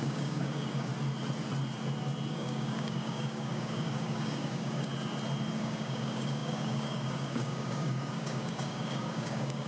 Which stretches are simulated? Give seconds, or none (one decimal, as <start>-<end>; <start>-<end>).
0.0-0.9; 2.3-4.9; 5.6-9.7